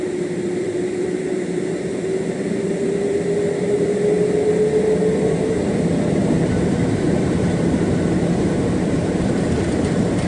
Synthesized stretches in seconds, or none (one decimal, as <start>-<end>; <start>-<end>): 0.0-1.9; 5.2-10.3